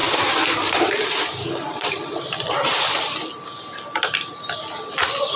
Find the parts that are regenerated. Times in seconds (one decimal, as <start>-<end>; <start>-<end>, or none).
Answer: 0.0-2.8